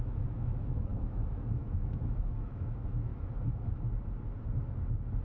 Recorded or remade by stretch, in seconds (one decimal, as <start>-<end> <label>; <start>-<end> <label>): 0.0-3.1 remade; 3.1-5.2 recorded